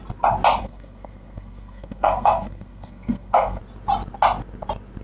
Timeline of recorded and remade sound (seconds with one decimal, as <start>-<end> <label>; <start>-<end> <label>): 0.0-0.6 recorded; 0.6-3.6 remade; 3.6-5.0 recorded